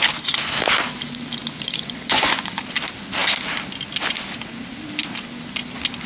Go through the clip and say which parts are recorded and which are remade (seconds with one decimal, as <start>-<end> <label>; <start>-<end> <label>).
0.0-1.4 recorded; 1.4-2.6 remade; 2.6-6.1 recorded